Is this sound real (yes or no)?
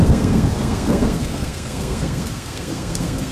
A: no